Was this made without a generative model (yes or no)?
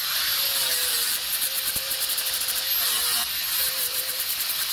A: yes